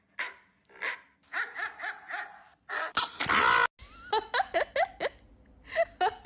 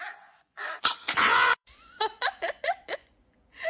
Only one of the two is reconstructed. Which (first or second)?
second